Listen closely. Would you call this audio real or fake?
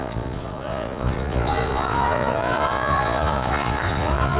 fake